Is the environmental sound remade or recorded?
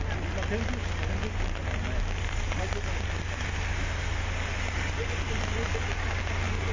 recorded